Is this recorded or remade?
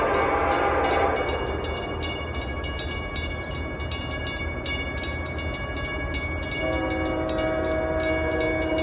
recorded